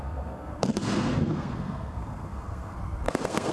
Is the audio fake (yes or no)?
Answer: yes